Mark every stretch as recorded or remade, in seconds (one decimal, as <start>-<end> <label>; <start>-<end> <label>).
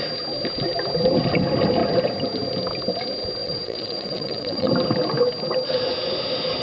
0.0-3.4 recorded; 3.4-4.7 remade; 4.7-6.6 recorded